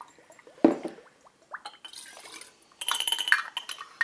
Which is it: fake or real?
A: real